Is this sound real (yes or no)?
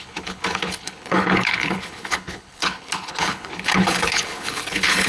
no